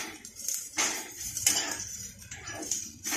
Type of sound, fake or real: fake